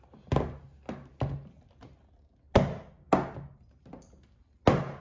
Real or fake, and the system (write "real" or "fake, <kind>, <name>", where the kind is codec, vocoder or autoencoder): real